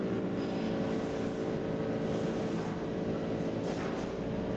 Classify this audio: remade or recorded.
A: recorded